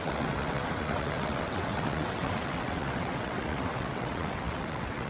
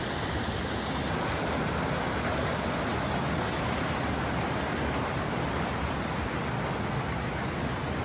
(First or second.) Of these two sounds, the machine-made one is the first